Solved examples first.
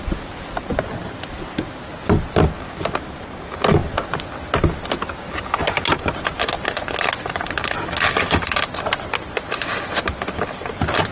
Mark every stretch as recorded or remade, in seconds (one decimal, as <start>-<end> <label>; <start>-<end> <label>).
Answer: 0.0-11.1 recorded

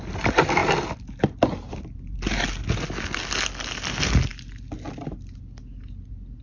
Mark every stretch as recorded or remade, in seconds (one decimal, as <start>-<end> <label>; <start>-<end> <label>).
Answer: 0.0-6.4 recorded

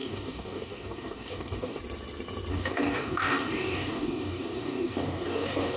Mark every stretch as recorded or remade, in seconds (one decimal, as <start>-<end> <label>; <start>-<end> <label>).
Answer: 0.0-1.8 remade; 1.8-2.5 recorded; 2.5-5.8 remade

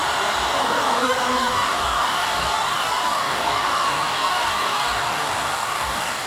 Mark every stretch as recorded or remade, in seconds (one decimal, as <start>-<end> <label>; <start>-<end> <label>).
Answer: 0.0-0.6 recorded; 0.6-6.3 remade